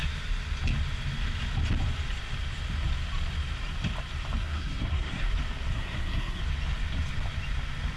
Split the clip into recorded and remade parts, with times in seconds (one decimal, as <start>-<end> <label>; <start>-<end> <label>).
0.0-4.4 recorded; 4.4-5.3 remade; 5.3-5.7 recorded; 5.7-6.4 remade; 6.4-8.0 recorded